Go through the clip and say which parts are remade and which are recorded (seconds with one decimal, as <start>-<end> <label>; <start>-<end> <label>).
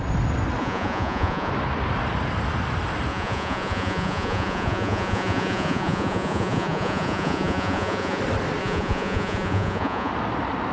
0.0-0.6 recorded; 0.6-1.5 remade; 1.5-3.1 recorded; 3.1-8.2 remade; 8.2-8.6 recorded; 8.6-10.1 remade; 10.1-10.7 recorded